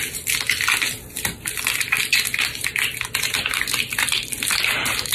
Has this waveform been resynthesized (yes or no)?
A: yes